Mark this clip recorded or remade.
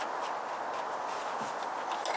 recorded